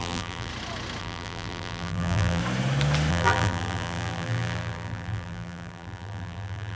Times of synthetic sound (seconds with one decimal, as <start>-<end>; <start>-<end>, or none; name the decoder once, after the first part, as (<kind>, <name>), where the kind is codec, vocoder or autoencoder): 0.0-0.5 (vocoder, BigVGAN v2); 1.0-2.4; 3.1-6.7